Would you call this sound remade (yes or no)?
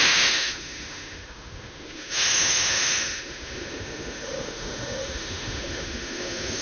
yes